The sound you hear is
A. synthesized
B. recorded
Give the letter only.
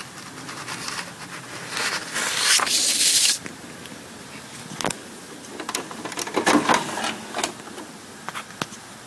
B